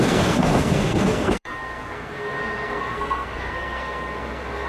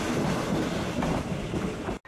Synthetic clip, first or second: first